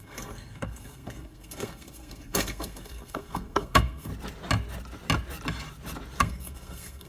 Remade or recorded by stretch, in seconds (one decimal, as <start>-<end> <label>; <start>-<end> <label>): 0.0-4.1 remade; 4.1-6.2 recorded; 6.2-7.1 remade